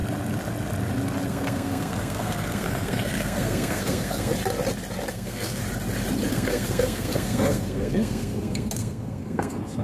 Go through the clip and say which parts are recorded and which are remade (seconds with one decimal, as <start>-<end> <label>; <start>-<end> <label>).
0.0-1.3 recorded; 1.3-4.3 remade; 4.3-5.1 recorded; 5.1-5.6 remade; 5.6-6.3 recorded; 6.3-9.8 remade